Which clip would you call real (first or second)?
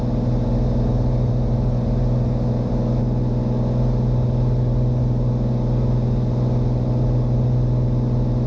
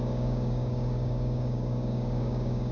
first